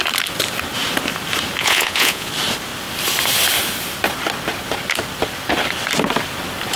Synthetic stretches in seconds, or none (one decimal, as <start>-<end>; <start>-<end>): 1.6-2.3